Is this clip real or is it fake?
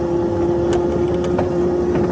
real